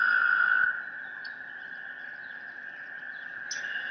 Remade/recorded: recorded